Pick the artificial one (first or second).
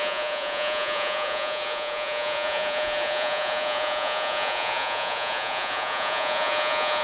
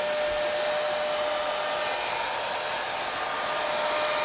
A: first